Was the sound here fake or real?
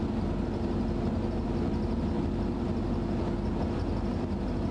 real